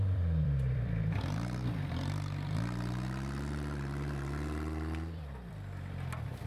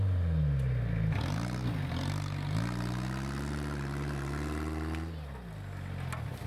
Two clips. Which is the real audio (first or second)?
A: second